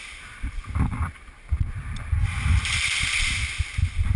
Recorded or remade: recorded